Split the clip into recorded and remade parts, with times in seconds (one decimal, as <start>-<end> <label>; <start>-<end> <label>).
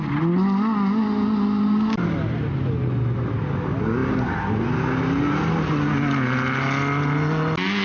0.0-7.8 recorded